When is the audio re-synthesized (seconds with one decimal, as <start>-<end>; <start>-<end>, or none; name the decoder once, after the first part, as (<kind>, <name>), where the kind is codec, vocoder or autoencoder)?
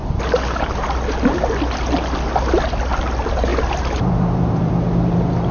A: 3.5-4.7 (vocoder, BigVGAN v2)